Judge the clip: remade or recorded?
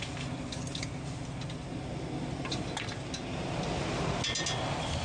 recorded